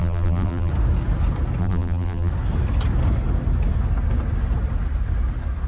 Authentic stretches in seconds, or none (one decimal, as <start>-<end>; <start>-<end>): 0.7-1.6; 2.3-5.7